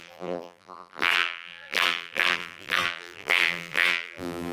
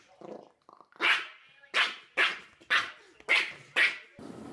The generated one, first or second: first